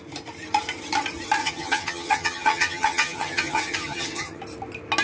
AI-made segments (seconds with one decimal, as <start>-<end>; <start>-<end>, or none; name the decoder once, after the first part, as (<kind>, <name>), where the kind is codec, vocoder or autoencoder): 1.4-4.4 (vocoder, HiFi-GAN)